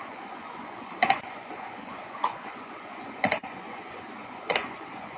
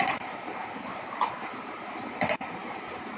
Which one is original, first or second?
second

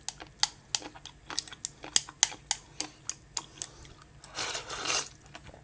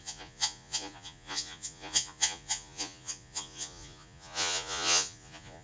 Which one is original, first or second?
first